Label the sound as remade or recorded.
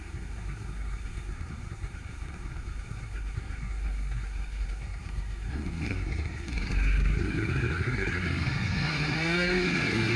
remade